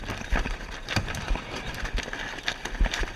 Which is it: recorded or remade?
recorded